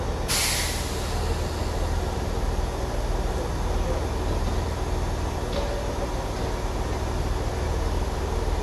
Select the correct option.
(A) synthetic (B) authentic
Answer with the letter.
B